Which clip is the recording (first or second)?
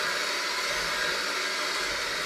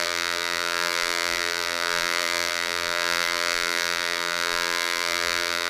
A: first